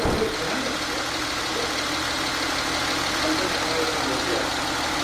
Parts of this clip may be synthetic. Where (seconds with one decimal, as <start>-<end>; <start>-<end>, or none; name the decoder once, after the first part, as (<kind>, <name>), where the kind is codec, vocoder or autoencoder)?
none